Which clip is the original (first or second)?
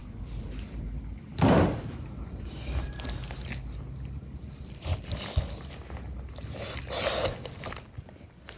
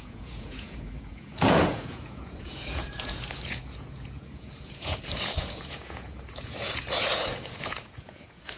first